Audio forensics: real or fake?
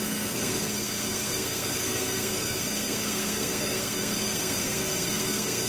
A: fake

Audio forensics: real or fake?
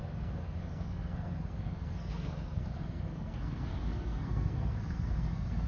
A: fake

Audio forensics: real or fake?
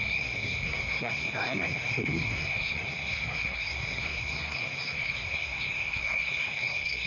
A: fake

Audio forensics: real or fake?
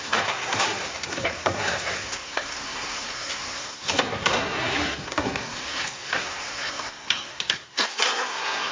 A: fake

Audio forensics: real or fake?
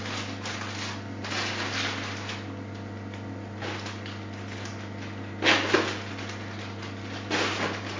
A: real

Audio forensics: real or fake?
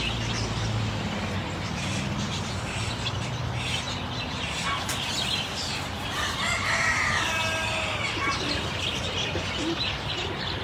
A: real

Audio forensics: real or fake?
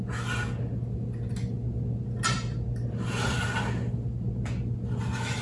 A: real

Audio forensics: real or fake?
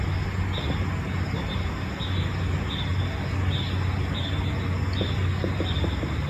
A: real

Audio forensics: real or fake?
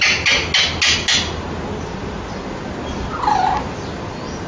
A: real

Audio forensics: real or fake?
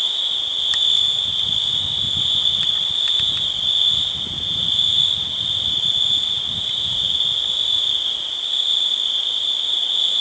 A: real